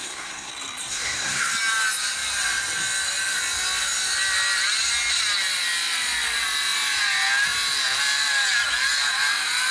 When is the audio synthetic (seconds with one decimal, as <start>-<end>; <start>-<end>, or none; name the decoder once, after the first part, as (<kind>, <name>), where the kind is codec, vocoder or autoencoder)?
0.0-0.5 (codec, SNAC); 0.9-1.5